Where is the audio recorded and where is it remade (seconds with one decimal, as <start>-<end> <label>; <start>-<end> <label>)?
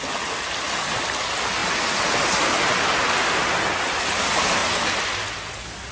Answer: 0.0-5.9 recorded